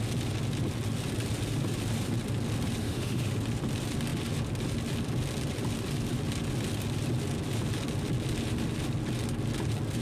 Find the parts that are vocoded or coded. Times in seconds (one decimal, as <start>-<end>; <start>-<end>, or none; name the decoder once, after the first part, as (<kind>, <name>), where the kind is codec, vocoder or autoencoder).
2.8-3.3 (autoencoder, DAC-VAE)